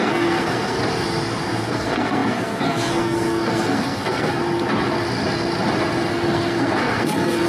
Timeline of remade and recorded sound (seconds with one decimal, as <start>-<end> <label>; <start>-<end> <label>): 0.0-0.8 remade; 0.8-1.4 recorded; 1.4-4.4 remade; 4.4-6.1 recorded; 6.1-7.5 remade